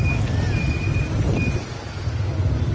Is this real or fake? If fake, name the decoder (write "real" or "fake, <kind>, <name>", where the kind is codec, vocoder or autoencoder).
real